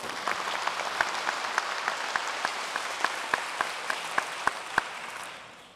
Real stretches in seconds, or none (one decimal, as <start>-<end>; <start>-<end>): 0.0-5.8